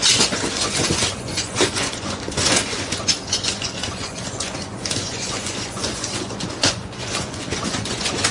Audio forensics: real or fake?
fake